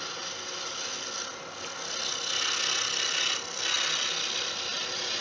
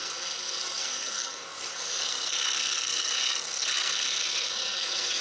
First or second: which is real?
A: first